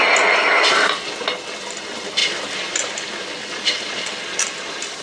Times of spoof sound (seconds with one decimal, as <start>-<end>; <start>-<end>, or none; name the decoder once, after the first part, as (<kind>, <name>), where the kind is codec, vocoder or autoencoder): none